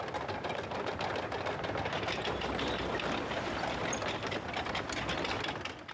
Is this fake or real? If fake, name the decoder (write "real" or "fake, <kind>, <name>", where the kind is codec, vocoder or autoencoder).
real